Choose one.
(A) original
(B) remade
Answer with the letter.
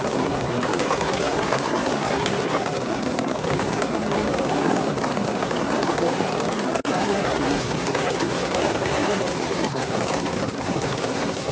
B